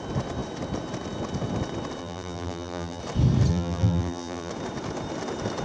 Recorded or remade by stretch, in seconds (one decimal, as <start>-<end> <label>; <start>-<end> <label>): 0.0-2.0 recorded; 2.0-3.0 remade; 3.0-3.5 recorded; 3.5-4.5 remade; 4.5-5.6 recorded